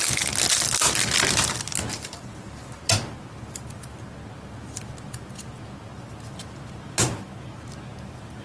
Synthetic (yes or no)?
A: no